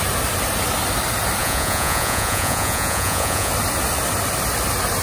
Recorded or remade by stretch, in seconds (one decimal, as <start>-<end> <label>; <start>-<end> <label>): 0.0-1.4 recorded; 1.4-3.5 remade; 3.5-5.0 recorded